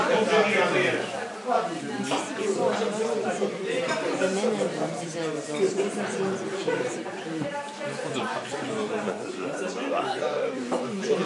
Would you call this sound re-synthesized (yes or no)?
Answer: yes